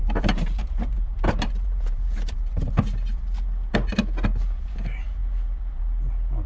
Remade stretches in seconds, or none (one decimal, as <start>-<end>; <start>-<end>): 0.0-2.7